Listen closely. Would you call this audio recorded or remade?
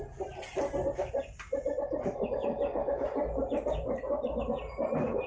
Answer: recorded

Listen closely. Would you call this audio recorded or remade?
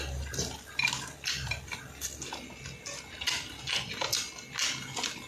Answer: recorded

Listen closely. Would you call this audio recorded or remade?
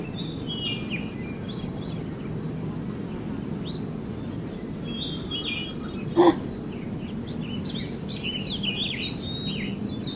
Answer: recorded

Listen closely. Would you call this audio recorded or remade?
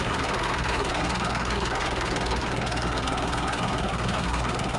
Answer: remade